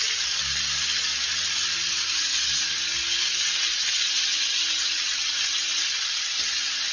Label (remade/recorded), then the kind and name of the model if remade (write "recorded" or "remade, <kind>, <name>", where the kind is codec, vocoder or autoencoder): recorded